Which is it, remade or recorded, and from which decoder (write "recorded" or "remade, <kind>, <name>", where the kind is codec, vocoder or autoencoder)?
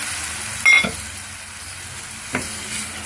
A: recorded